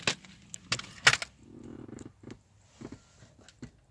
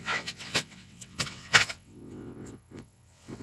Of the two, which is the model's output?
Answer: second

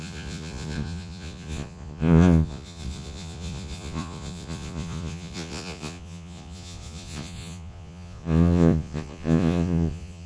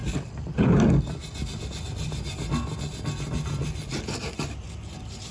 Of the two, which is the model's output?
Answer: first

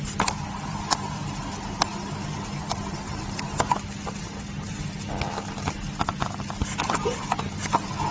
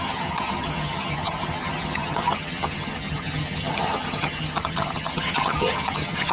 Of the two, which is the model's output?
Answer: second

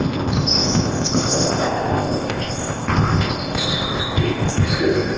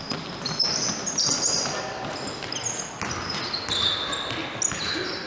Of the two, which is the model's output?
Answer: first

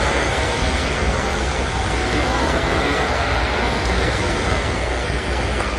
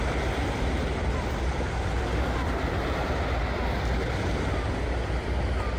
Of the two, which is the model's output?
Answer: first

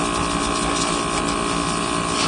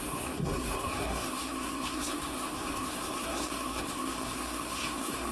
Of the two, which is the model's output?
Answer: second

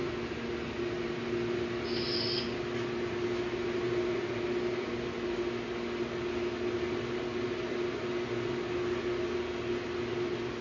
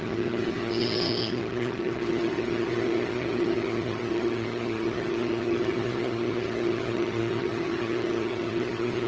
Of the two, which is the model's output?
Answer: second